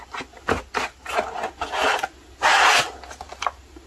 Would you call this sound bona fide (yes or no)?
yes